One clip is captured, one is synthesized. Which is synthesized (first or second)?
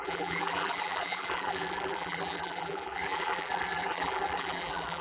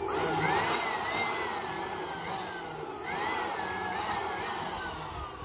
first